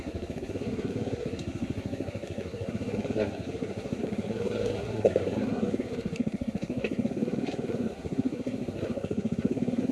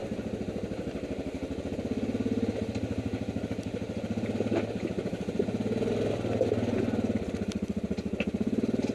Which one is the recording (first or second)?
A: second